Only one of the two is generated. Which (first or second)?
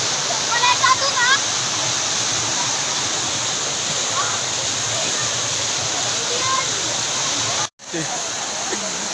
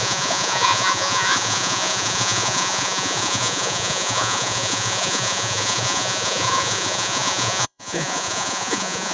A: second